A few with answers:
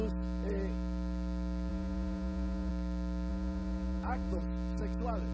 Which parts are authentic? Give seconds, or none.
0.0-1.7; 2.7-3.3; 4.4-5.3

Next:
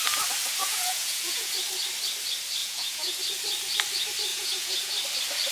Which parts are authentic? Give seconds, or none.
0.0-0.6; 1.5-2.6; 3.2-4.3; 4.9-5.5

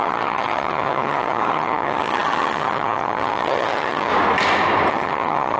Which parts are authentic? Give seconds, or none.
4.1-4.9